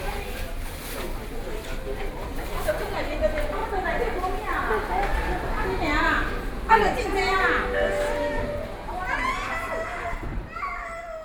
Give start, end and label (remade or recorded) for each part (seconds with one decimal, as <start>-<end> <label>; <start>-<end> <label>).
0.0-3.6 recorded; 3.6-4.4 remade; 4.4-11.2 recorded